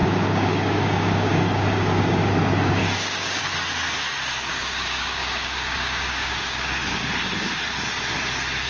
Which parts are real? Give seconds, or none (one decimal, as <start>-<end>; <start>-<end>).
2.3-2.8; 3.4-4.5; 7.1-8.7